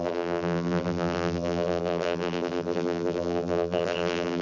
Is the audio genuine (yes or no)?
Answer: no